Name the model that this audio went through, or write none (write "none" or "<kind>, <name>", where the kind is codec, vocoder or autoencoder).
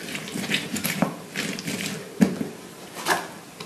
none